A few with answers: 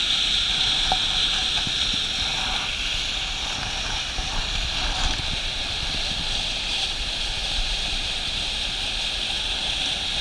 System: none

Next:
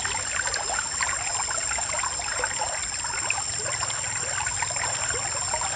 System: none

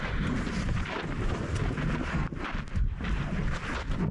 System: none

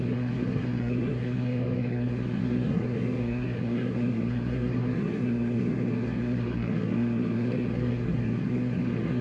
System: codec, SNAC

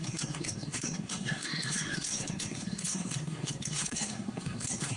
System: codec, SNAC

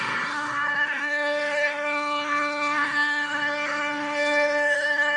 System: codec, SNAC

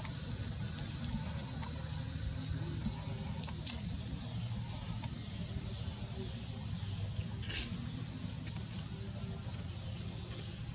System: none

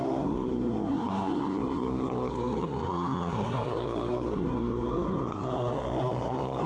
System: codec, SNAC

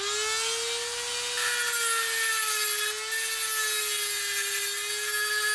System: none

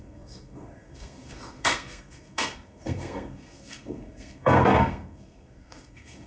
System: codec, SNAC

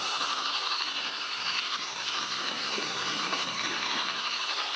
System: codec, SNAC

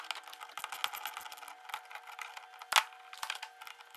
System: none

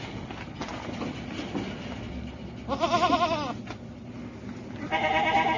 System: none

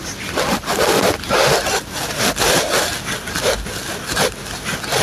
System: none